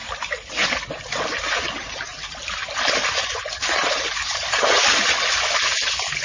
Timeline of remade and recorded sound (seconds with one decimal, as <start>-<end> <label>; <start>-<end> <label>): 0.0-6.2 recorded